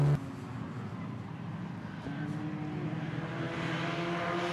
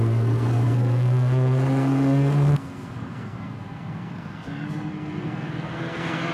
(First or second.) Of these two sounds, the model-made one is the second